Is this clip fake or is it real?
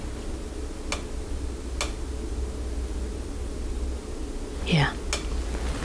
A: real